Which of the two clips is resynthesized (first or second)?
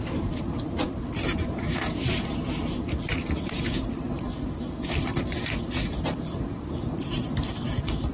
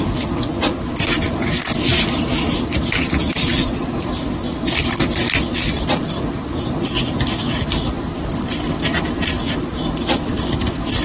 first